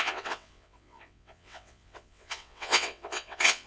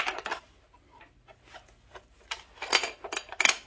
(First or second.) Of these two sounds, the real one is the second